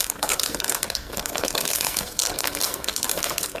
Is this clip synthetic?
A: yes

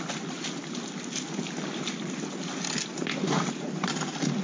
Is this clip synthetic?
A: no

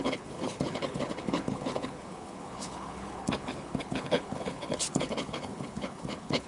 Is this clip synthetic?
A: yes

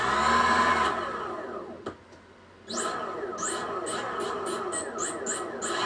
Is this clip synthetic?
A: no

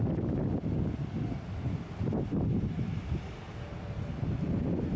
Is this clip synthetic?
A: no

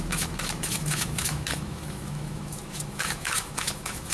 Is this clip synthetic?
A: yes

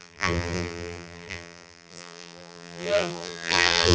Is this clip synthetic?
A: yes